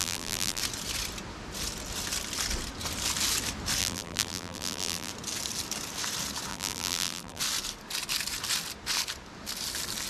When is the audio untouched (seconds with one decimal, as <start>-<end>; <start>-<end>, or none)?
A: 0.6-3.8; 5.1-6.5; 7.4-10.1